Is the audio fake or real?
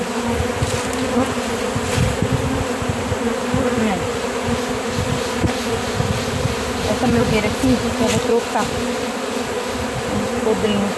real